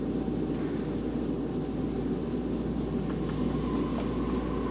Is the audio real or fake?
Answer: real